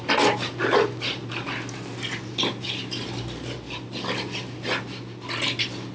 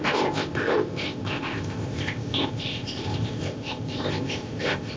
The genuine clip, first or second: first